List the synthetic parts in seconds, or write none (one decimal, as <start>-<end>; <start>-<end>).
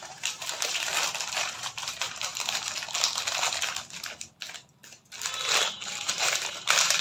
0.0-0.9; 1.4-2.3; 5.7-7.0